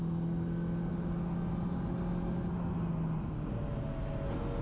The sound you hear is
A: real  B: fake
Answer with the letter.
A